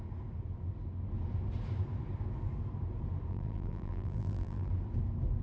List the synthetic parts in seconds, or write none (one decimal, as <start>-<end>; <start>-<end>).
3.3-4.7